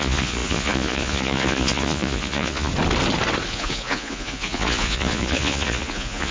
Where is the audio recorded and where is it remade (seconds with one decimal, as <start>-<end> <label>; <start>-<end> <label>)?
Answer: 0.0-2.7 remade; 2.7-3.5 recorded; 3.5-6.3 remade